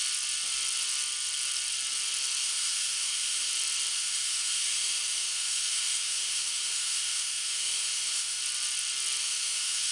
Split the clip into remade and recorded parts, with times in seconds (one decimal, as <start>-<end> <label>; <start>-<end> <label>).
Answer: 0.0-2.4 recorded; 2.4-3.5 remade; 3.5-3.9 recorded; 3.9-8.4 remade; 8.4-9.2 recorded; 9.2-9.9 remade